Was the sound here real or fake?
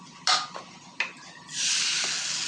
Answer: real